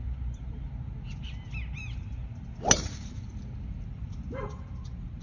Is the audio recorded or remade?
recorded